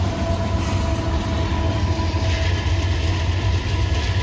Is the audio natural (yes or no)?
yes